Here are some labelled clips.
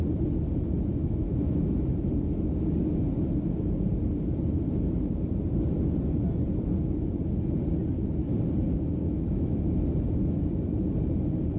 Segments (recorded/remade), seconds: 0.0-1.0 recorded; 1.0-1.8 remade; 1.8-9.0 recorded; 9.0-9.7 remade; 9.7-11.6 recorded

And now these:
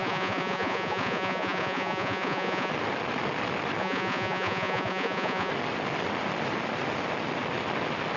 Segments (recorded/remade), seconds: 0.0-2.7 remade; 2.7-3.8 recorded; 3.8-5.5 remade; 5.5-8.2 recorded

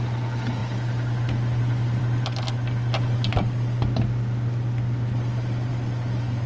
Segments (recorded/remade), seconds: 0.0-6.5 recorded

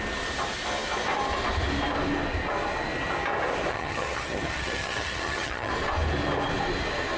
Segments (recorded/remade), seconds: 0.0-3.7 recorded; 3.7-5.7 remade; 5.7-7.2 recorded

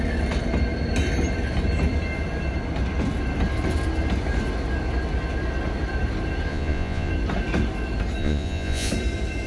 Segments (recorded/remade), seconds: 0.0-6.5 recorded; 6.5-7.1 remade; 7.1-8.2 recorded; 8.2-8.9 remade; 8.9-9.5 recorded

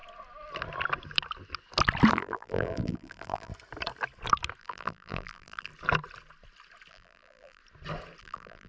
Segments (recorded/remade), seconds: 0.0-2.1 recorded; 2.1-3.5 remade; 3.5-4.6 recorded; 4.6-5.7 remade; 5.7-6.9 recorded; 6.9-7.6 remade; 7.6-8.2 recorded; 8.2-8.7 remade

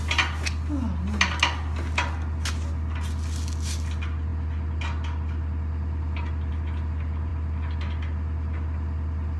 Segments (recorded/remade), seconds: 0.0-9.4 recorded

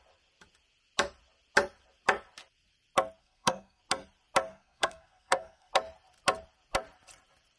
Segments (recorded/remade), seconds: 0.0-3.2 recorded; 3.2-3.8 remade; 3.8-4.5 recorded; 4.5-5.7 remade; 5.7-7.6 recorded